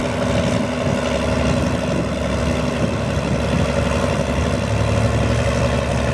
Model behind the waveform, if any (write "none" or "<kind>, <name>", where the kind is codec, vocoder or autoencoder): none